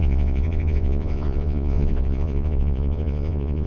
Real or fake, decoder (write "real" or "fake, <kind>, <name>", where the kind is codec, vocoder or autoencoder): fake, vocoder, Vocos